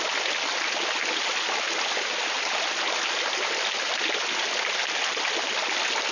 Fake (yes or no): no